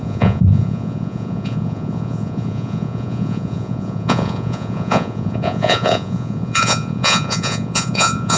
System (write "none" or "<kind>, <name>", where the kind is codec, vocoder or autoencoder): vocoder, Vocos